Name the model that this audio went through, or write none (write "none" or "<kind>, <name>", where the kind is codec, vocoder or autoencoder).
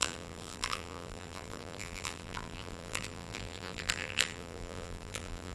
vocoder, BigVGAN v2